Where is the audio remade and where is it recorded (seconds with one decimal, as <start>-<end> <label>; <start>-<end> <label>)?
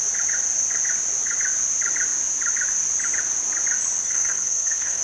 0.0-4.0 recorded; 4.0-5.0 remade